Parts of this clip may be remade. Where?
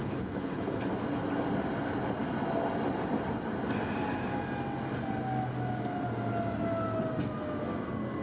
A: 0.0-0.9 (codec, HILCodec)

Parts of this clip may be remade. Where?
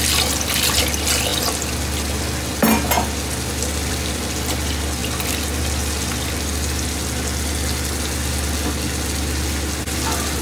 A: none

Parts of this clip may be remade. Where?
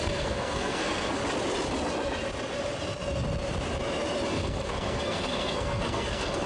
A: 0.0-1.2 (codec, SNAC); 4.3-6.5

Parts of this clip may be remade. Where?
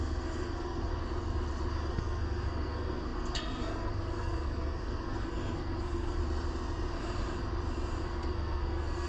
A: 0.0-0.9 (codec, SNAC); 1.9-6.2; 8.0-9.1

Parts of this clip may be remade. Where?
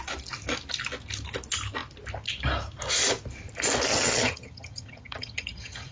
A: 3.9-5.9 (vocoder, HiFi-GAN)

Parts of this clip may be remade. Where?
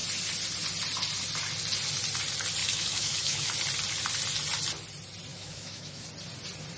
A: 2.6-3.5 (autoencoder, DAC-VAE); 5.3-6.1